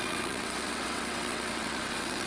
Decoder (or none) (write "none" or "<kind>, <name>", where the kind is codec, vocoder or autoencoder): vocoder, WaveNeXt